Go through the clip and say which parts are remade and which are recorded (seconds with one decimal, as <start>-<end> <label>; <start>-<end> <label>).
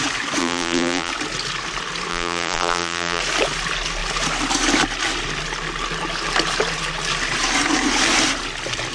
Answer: 0.0-0.4 recorded; 0.4-1.1 remade; 1.1-2.1 recorded; 2.1-3.2 remade; 3.2-8.9 recorded